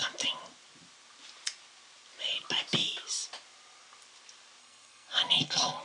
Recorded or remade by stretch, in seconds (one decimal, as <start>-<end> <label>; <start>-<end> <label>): 0.0-4.6 recorded; 4.6-5.8 remade